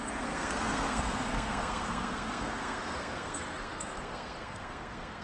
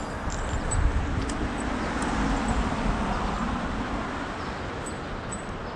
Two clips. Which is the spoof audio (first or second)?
first